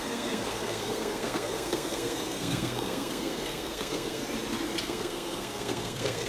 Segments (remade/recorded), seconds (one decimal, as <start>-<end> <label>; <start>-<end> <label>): 0.0-4.2 remade; 4.2-4.8 recorded; 4.8-6.3 remade